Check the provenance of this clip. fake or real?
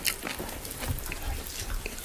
fake